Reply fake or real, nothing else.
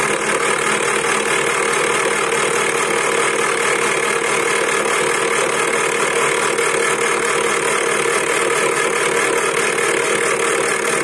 real